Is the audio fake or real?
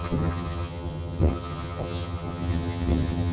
fake